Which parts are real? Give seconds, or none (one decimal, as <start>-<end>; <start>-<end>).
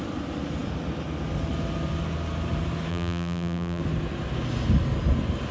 0.0-2.9; 3.8-5.5